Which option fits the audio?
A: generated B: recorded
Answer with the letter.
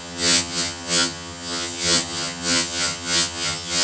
A